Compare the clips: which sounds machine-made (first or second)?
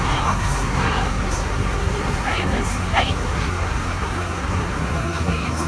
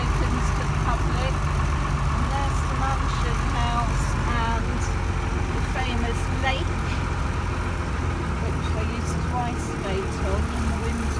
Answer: first